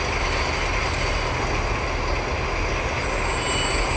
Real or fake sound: real